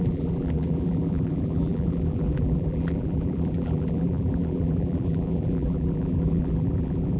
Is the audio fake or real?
fake